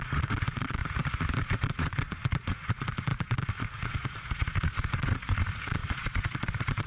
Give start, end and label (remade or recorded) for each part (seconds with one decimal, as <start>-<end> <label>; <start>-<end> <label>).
0.0-0.8 remade; 0.8-1.4 recorded; 1.4-6.9 remade